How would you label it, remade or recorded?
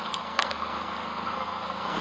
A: remade